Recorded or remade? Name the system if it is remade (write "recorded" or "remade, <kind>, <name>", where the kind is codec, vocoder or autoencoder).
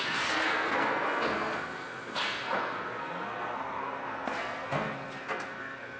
remade, codec, SNAC